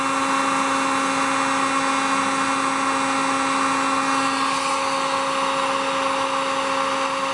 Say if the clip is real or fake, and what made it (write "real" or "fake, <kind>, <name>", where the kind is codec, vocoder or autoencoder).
real